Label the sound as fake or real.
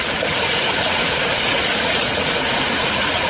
fake